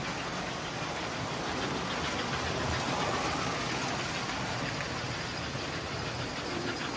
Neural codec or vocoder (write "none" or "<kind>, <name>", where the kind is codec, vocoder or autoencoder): none